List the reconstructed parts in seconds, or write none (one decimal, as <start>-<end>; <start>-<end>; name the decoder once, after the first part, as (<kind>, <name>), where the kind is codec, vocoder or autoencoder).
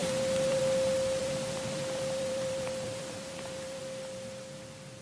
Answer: 0.0-0.6 (vocoder, BigVGAN v2); 1.2-3.8